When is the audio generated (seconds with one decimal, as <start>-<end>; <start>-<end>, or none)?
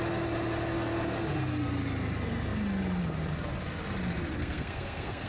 4.4-5.3